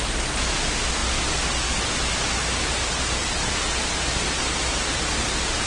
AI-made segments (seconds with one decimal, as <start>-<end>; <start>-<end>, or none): none